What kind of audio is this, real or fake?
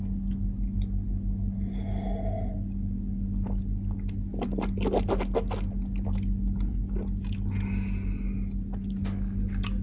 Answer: real